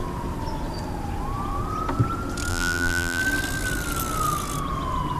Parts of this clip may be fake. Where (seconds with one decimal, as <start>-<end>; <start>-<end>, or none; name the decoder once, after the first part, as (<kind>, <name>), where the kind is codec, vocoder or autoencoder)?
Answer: 2.5-3.2 (vocoder, BigVGAN v2)